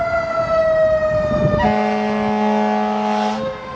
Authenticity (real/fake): real